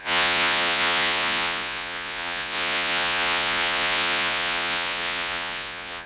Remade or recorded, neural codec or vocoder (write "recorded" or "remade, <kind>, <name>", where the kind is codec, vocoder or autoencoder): remade, vocoder, Vocos